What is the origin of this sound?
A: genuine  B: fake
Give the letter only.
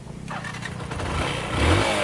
A